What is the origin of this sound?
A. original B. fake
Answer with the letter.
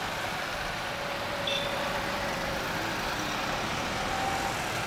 A